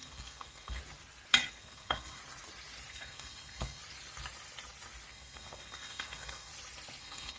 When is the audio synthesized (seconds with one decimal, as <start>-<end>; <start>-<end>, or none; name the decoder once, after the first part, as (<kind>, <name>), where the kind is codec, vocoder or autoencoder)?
0.0-0.8 (codec, SNAC); 1.5-2.2; 2.9-3.8; 5.1-6.5; 7.0-7.4